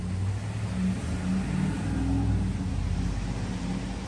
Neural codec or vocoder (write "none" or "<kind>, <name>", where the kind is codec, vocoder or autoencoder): none